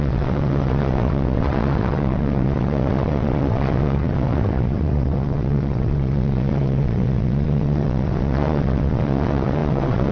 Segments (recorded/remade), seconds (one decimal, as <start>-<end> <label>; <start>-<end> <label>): 0.0-10.1 remade